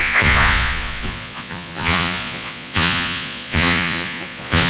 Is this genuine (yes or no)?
no